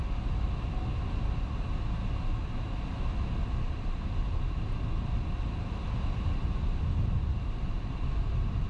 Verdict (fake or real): real